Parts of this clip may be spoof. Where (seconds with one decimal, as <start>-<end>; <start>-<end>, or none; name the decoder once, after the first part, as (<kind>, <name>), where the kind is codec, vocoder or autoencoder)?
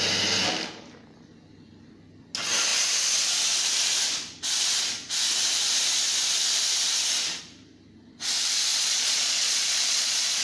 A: 8.7-10.4 (vocoder, Vocos)